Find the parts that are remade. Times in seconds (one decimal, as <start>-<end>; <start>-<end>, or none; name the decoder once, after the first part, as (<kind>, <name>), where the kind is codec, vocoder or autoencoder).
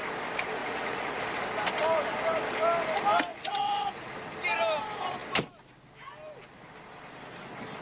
0.6-1.2 (vocoder, Vocos); 3.3-4.1